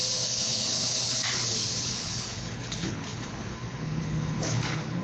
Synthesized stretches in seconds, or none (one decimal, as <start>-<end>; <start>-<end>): 0.0-5.0